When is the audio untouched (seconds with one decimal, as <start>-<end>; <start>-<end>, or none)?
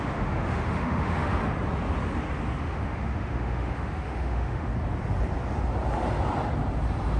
1.4-2.6; 4.7-7.2